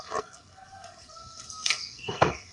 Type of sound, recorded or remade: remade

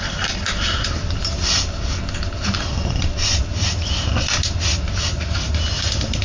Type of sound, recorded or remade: recorded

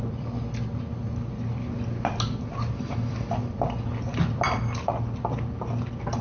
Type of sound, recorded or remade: recorded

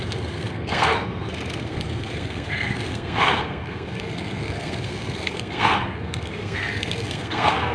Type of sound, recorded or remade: remade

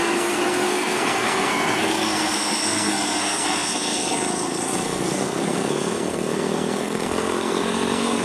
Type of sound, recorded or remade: remade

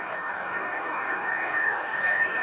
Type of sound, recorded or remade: remade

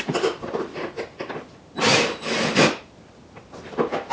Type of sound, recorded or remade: remade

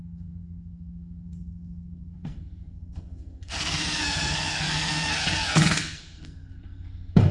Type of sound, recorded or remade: remade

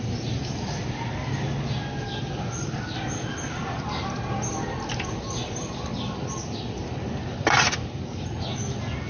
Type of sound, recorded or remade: recorded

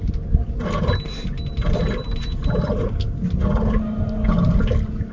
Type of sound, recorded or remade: recorded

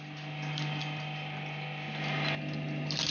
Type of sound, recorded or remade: recorded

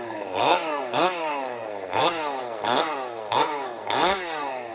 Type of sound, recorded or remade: remade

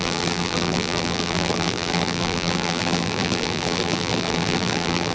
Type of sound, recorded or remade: remade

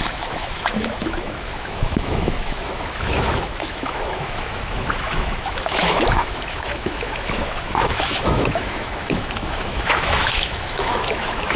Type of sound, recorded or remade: remade